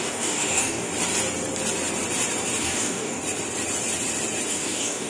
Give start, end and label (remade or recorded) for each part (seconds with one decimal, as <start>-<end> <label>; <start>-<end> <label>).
0.0-0.9 remade; 0.9-2.6 recorded; 2.6-3.2 remade; 3.2-4.5 recorded; 4.5-5.1 remade